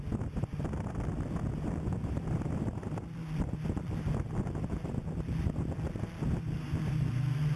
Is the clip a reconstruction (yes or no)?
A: yes